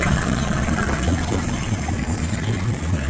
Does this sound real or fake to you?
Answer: fake